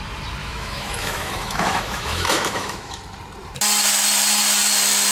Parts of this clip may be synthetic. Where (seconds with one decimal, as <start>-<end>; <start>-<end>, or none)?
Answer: 0.4-3.0